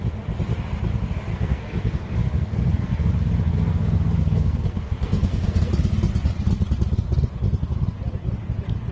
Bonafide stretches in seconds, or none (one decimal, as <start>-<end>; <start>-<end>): 0.0-1.3; 3.1-3.5; 5.7-8.9